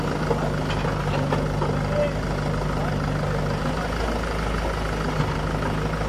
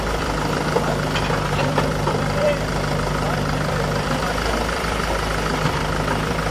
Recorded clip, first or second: first